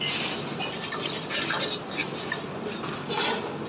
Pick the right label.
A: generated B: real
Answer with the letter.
B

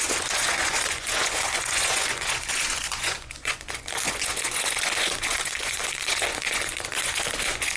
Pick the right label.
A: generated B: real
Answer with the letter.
A